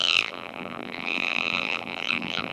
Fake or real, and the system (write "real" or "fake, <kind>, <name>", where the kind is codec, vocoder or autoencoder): fake, vocoder, BigVGAN v2